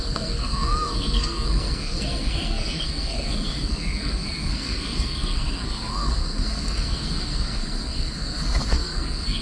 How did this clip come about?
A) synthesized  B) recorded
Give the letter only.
A